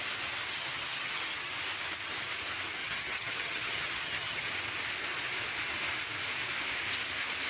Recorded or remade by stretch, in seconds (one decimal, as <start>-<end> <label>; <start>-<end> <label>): 0.0-0.5 recorded; 0.5-1.5 remade; 1.5-2.8 recorded; 2.8-4.5 remade; 4.5-7.5 recorded